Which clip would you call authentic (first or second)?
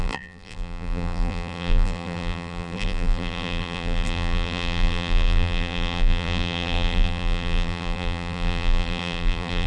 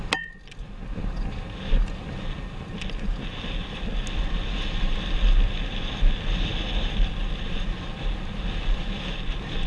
second